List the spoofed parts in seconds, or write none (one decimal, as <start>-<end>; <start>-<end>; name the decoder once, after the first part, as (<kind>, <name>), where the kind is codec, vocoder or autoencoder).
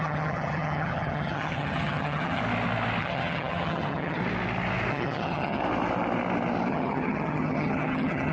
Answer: 0.0-2.4 (vocoder, HiFi-GAN); 3.0-4.2; 4.9-5.6; 6.7-8.3